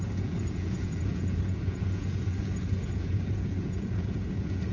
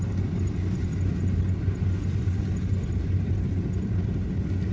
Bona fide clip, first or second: second